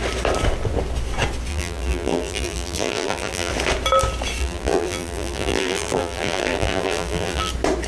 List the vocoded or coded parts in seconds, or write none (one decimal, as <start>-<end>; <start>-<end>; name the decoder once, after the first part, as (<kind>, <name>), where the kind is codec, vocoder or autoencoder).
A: 1.5-3.5 (vocoder, BigVGAN v2); 4.4-7.5